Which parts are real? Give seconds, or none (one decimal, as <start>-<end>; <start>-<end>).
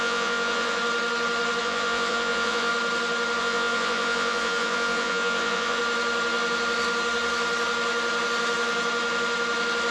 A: 0.8-1.6; 2.7-3.4; 5.8-9.9